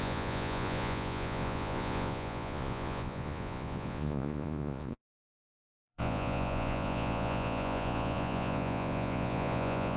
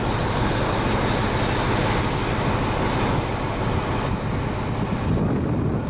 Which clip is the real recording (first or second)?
second